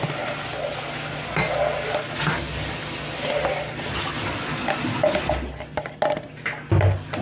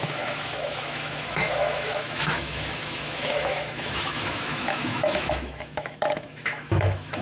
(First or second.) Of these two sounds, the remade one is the second